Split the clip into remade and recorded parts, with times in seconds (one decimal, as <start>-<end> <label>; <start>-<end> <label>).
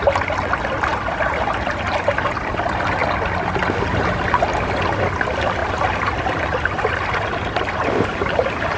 0.0-0.9 remade; 0.9-2.0 recorded; 2.0-3.0 remade; 3.0-3.5 recorded; 3.5-8.8 remade